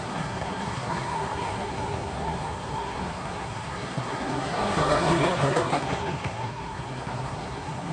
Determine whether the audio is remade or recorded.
remade